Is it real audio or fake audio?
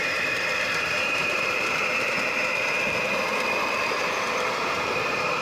fake